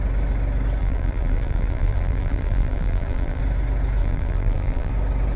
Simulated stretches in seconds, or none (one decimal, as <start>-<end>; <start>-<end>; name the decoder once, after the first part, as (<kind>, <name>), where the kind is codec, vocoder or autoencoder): 0.8-3.4 (vocoder, BigVGAN v2); 4.0-4.9